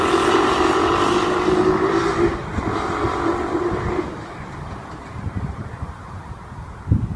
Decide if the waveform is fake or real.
fake